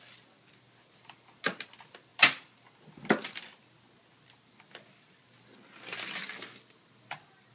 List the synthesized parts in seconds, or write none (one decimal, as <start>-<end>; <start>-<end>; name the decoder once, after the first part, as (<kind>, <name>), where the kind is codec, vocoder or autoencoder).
none